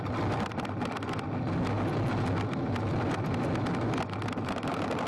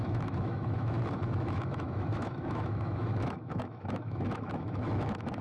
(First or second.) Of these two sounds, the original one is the first